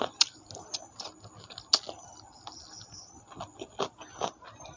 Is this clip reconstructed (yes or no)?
no